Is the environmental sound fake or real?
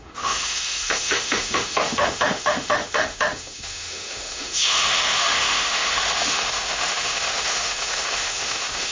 fake